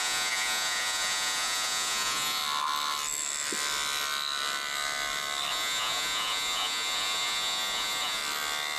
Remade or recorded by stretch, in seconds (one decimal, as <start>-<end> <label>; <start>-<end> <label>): 0.0-2.4 remade; 2.4-5.5 recorded; 5.5-8.2 remade; 8.2-8.8 recorded